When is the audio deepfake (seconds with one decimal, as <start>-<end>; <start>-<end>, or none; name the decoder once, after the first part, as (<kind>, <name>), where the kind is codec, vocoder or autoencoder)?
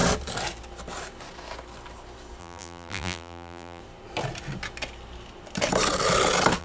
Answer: 2.4-3.8 (vocoder, BigVGAN v2)